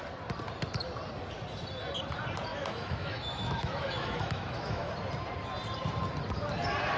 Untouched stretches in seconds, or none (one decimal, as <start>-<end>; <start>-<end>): 0.0-2.5; 4.9-7.0